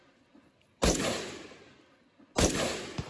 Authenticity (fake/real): real